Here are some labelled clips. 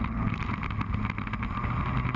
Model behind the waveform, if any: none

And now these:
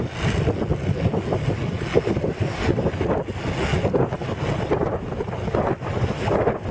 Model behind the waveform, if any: none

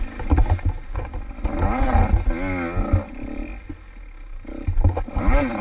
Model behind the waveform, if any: none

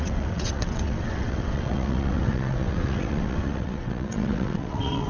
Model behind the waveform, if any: vocoder, WaveNeXt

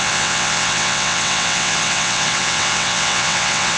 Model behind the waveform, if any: vocoder, WaveNeXt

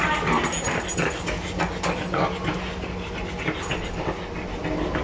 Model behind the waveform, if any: none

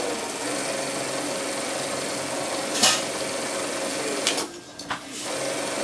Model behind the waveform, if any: none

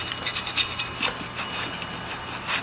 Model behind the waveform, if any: none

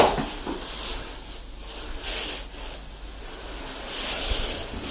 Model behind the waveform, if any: none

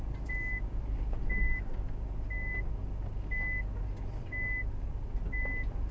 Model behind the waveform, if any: none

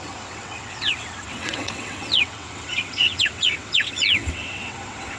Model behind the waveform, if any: vocoder, WaveNeXt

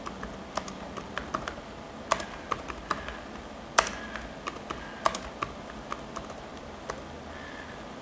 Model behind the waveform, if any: none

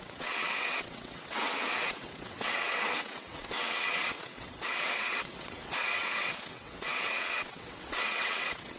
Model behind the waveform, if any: vocoder, WaveNeXt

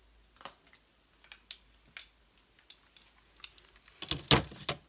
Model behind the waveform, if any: none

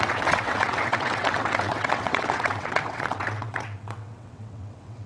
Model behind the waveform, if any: vocoder, WaveNeXt